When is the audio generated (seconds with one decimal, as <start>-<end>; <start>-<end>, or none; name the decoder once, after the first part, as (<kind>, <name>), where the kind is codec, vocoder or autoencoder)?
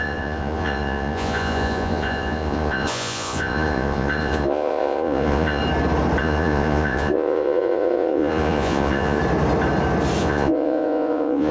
0.0-5.6 (vocoder, Vocos); 6.2-9.2; 10.2-11.5